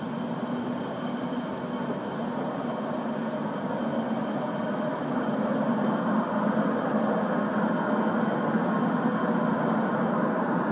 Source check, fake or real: real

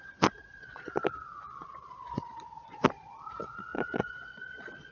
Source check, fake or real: fake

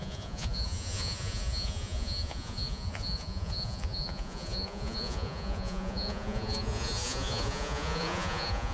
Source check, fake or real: fake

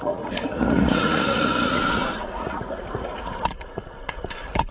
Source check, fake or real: fake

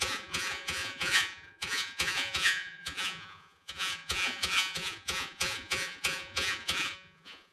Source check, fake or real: fake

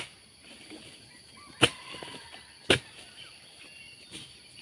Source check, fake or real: real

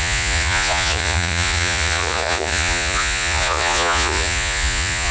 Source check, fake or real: fake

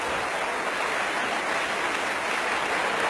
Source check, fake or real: real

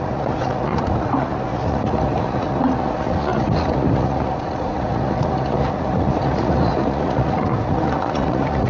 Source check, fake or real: fake